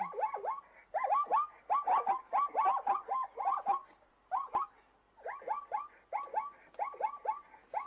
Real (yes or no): yes